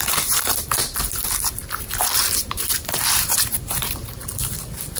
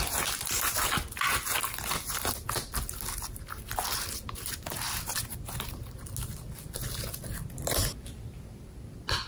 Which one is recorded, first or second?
second